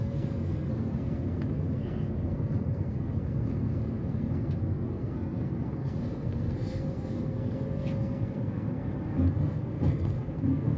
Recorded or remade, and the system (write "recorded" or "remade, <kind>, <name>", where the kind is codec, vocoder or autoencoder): remade, codec, SNAC